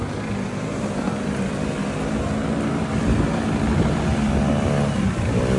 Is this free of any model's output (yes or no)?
yes